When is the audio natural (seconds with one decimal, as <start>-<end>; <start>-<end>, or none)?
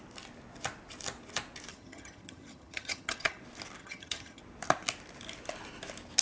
0.0-1.7; 3.4-3.8; 4.4-6.2